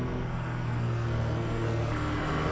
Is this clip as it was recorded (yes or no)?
no